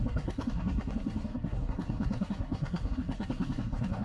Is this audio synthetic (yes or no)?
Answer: yes